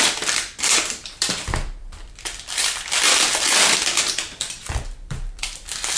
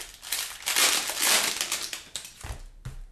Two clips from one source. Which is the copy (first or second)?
first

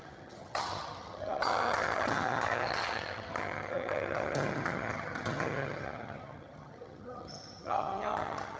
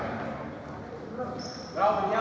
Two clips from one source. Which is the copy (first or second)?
first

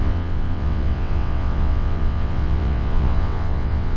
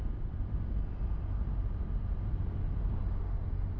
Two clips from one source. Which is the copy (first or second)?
first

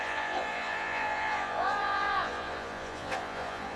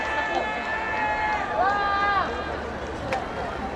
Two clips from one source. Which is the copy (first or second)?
first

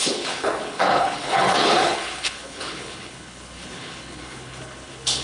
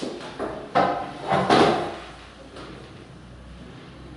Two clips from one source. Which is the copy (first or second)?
first